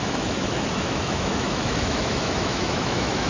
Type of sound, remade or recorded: remade